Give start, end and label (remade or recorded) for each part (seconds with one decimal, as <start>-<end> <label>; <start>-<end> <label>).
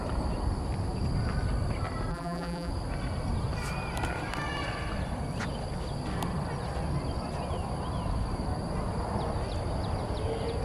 0.0-2.1 recorded; 2.1-2.7 remade; 2.7-10.6 recorded